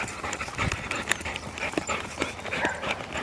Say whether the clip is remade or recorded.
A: remade